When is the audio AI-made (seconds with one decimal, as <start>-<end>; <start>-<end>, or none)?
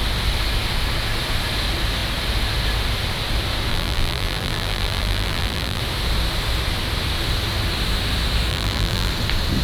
3.7-5.8; 8.5-9.1